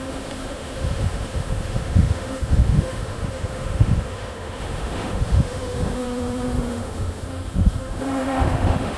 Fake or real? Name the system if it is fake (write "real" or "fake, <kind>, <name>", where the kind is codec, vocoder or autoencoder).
fake, autoencoder, DAC-VAE